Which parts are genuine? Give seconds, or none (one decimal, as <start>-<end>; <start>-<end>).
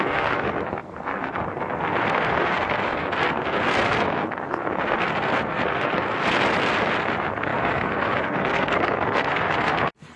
6.2-7.0